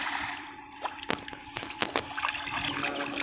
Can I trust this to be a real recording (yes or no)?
yes